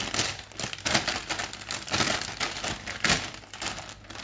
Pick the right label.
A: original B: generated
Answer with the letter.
A